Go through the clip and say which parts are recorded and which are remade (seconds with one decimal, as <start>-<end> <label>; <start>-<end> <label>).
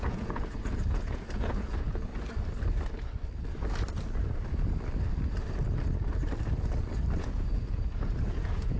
0.0-2.1 remade; 2.1-7.2 recorded; 7.2-8.8 remade